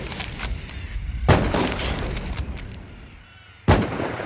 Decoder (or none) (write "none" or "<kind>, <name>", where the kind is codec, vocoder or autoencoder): none